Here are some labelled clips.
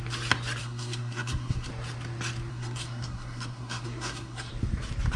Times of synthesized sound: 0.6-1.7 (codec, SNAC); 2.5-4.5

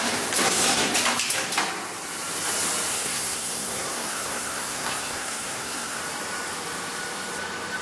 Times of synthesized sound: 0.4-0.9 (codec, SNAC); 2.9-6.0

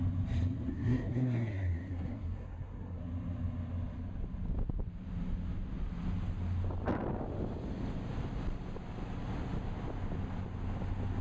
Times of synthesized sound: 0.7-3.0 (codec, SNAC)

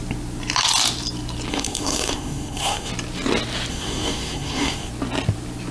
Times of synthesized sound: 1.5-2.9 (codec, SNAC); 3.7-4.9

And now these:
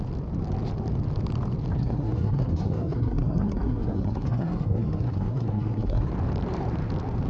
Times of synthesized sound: 1.8-6.1 (codec, SNAC)